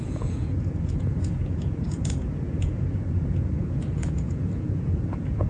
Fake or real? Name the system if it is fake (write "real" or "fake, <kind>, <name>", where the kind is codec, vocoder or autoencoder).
fake, vocoder, Vocos